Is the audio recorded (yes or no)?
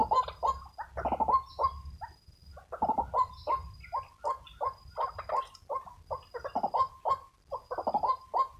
yes